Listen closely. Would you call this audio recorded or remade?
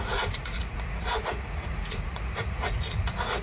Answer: remade